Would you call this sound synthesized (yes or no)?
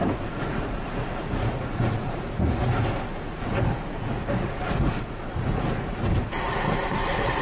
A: yes